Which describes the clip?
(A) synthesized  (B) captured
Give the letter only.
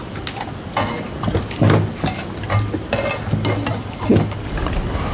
B